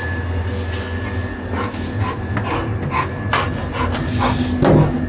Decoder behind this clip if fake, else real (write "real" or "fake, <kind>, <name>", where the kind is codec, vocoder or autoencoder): real